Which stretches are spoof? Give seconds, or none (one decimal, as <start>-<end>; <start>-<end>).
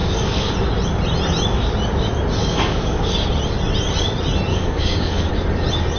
0.0-0.5; 2.4-3.1; 4.5-5.3